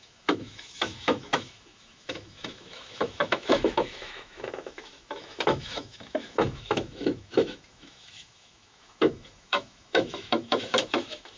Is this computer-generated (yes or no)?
yes